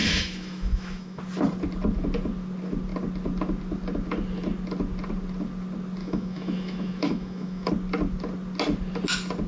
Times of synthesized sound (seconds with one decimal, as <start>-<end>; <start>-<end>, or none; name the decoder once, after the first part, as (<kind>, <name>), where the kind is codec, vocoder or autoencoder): 0.0-1.2 (autoencoder, DAC-VAE); 6.0-7.7